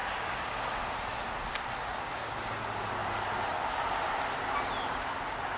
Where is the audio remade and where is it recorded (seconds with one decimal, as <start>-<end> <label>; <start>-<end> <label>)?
0.0-5.6 recorded